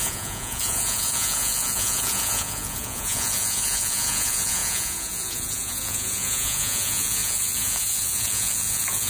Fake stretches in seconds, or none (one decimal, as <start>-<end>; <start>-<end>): 0.0-9.1